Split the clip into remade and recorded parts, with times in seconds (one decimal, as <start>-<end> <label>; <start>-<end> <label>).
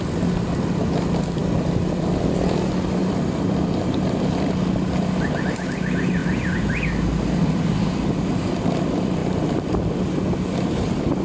0.0-3.0 recorded; 3.0-4.5 remade; 4.5-6.2 recorded; 6.2-7.6 remade; 7.6-11.2 recorded